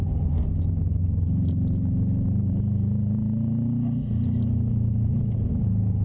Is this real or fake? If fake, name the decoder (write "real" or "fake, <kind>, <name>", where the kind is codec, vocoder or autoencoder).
real